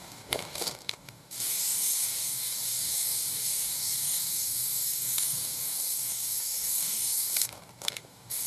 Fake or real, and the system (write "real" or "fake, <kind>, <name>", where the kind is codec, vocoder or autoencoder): fake, codec, DAC